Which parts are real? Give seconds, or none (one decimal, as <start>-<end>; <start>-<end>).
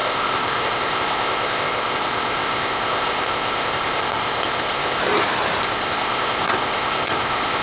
5.0-5.6